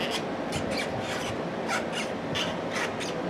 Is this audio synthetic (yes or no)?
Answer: no